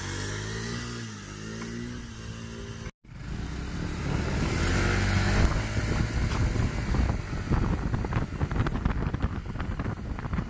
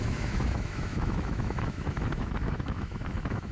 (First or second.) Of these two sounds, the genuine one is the first